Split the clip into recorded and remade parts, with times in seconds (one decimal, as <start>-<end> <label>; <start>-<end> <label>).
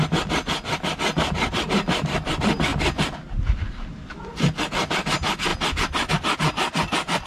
0.0-7.3 recorded